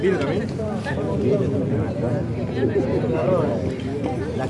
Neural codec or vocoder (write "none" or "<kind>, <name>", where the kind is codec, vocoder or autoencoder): none